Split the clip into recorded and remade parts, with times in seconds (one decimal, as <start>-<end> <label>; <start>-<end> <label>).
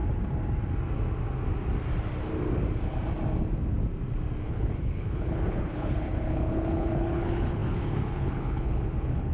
0.0-4.4 recorded; 4.4-9.3 remade